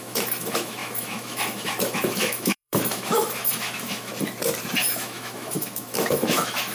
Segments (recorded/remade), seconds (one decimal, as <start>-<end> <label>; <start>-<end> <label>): 0.0-4.1 remade; 4.1-4.8 recorded; 4.8-6.7 remade